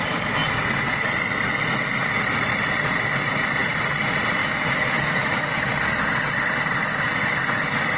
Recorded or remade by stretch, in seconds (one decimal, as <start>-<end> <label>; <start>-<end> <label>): 0.0-4.4 recorded; 4.4-5.8 remade; 5.8-8.0 recorded